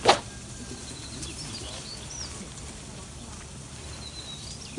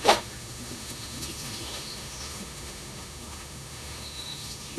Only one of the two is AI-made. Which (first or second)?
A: second